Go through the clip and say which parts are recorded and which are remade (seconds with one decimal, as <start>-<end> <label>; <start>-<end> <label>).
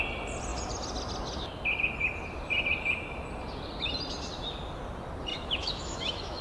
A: 0.0-5.3 recorded; 5.3-6.4 remade